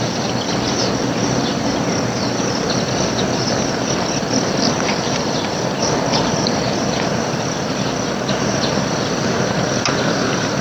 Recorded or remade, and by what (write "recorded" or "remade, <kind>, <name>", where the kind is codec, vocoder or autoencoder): recorded